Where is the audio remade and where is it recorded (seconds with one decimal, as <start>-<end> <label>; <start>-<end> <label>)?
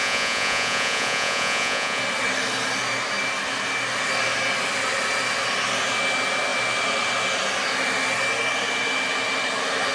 0.0-2.0 remade; 2.0-9.9 recorded